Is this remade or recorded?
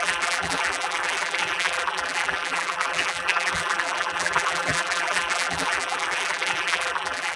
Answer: remade